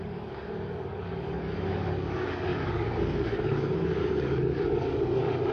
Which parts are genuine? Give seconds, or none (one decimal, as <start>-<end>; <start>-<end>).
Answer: none